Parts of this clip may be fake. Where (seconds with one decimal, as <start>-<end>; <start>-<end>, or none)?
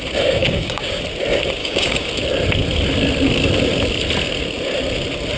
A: 0.4-0.9; 1.6-2.1